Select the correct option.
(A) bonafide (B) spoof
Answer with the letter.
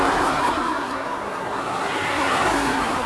B